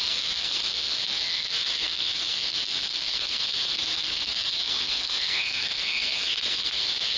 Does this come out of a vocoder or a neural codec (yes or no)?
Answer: yes